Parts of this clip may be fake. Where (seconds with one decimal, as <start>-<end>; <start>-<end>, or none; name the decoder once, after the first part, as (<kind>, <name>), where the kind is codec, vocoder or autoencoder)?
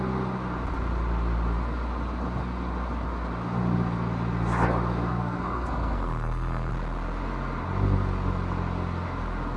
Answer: 5.1-6.7 (codec, SNAC)